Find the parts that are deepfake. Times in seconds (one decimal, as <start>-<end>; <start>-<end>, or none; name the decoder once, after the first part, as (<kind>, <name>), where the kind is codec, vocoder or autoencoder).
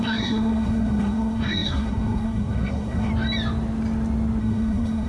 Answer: 0.0-3.1 (codec, SNAC); 4.4-5.1